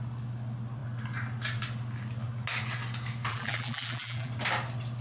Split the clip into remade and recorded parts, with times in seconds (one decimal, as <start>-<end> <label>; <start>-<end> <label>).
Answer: 0.0-3.3 recorded; 3.3-4.3 remade; 4.3-5.0 recorded